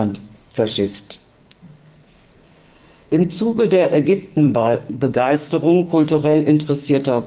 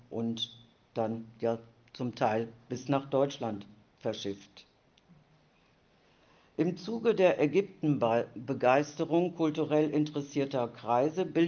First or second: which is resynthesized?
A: first